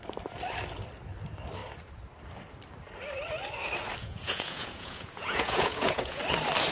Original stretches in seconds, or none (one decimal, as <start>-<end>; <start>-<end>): 0.0-4.0; 6.2-6.7